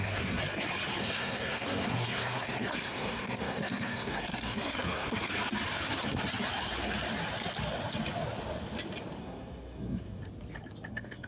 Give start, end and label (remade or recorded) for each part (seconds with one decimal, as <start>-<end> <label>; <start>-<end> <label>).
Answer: 0.0-0.4 remade; 0.4-1.0 recorded; 1.0-5.3 remade; 5.3-9.2 recorded; 9.2-10.2 remade; 10.2-10.9 recorded; 10.9-11.3 remade